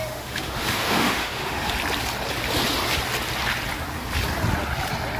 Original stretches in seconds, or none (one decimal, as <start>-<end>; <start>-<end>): 1.7-5.2